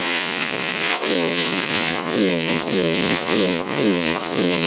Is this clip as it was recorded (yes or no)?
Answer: no